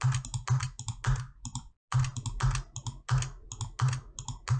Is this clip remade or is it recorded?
recorded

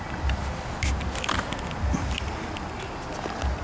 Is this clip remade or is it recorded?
recorded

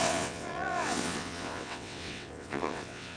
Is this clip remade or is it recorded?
remade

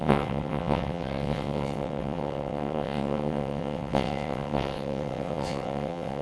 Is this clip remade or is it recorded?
remade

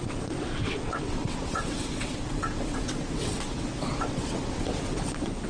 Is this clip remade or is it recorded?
remade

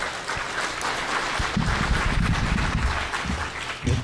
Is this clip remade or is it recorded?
recorded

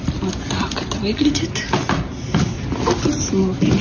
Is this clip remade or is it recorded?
recorded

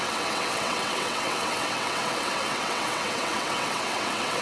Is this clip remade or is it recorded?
remade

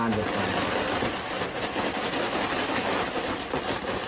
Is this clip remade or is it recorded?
recorded